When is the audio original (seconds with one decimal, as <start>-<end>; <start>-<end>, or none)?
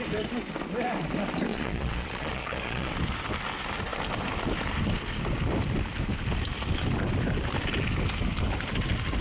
0.0-1.5; 2.9-9.2